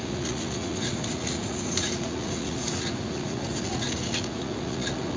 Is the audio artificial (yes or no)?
yes